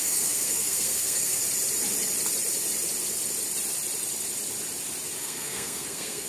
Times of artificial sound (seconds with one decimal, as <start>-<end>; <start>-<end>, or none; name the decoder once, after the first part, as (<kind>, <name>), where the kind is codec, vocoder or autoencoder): 0.0-1.4 (codec, SNAC); 5.2-6.3